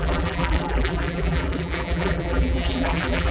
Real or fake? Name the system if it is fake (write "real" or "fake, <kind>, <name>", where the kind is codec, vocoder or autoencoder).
fake, vocoder, BigVGAN v2